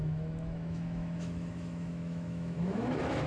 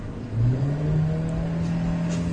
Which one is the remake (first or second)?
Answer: first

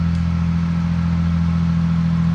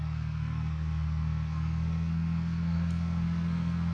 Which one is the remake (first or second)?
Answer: second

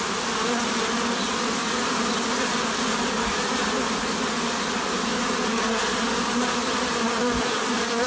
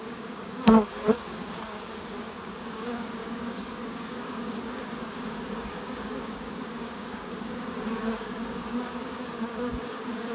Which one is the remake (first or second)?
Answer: second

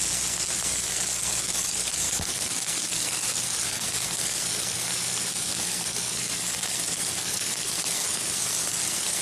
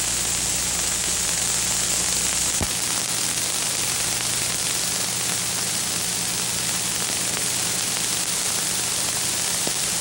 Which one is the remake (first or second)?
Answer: first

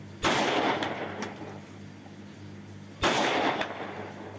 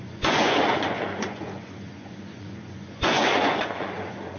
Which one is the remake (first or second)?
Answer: second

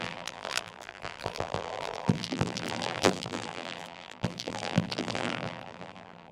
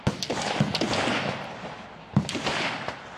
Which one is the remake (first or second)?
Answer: first